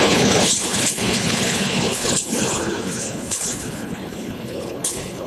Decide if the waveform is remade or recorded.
remade